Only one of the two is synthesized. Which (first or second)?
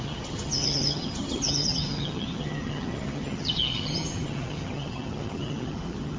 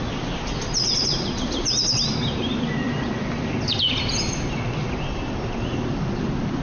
first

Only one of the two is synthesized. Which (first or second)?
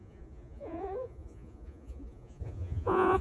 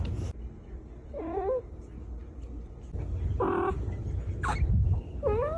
first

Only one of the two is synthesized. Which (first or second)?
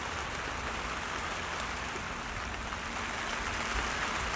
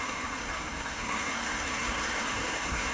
second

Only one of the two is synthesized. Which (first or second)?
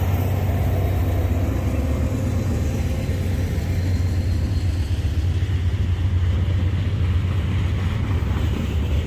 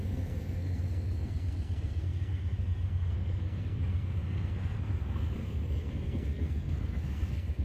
second